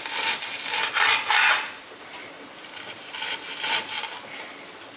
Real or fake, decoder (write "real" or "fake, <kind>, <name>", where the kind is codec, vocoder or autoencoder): real